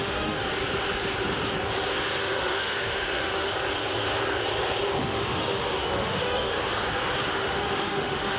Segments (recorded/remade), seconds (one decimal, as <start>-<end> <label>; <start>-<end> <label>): 0.0-0.4 remade; 0.4-2.1 recorded; 2.1-3.5 remade; 3.5-5.0 recorded; 5.0-6.6 remade; 6.6-7.3 recorded; 7.3-8.4 remade